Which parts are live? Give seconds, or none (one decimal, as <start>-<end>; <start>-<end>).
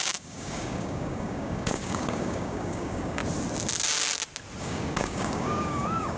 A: 3.2-4.6